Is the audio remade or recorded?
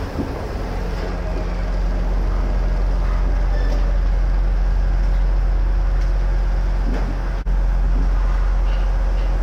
recorded